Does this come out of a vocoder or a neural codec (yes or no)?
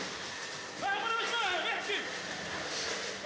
no